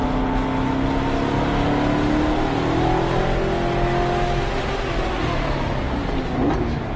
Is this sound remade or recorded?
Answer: recorded